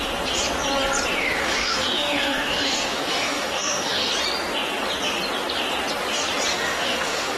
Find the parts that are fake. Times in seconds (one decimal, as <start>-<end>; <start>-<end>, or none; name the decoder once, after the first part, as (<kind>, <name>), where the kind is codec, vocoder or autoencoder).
1.2-4.1 (autoencoder, DAC-VAE); 6.5-7.4